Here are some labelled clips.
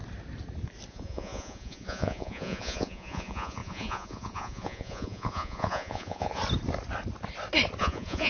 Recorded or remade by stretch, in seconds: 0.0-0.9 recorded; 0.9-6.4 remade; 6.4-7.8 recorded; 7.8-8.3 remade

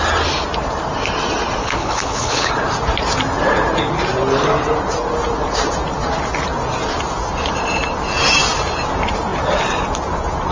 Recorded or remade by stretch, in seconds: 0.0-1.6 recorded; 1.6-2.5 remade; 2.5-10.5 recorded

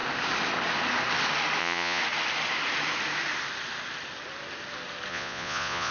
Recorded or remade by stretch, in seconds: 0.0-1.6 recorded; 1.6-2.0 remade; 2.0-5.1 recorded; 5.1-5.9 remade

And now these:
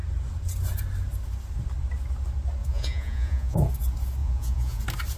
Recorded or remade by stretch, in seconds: 0.0-2.6 recorded; 2.6-3.7 remade; 3.7-4.2 recorded; 4.2-4.8 remade; 4.8-5.2 recorded

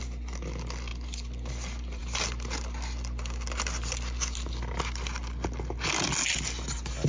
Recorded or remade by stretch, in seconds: 0.0-7.1 recorded

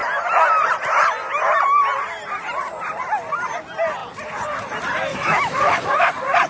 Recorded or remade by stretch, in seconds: 0.0-5.1 recorded; 5.1-6.1 remade; 6.1-6.5 recorded